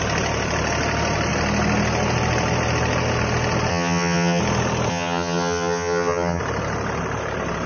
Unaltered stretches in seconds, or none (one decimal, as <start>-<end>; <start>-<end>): 0.0-3.7; 4.4-4.9; 6.4-7.7